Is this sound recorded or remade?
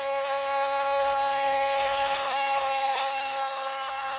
remade